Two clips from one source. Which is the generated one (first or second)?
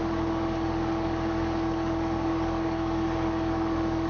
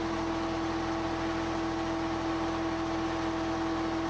first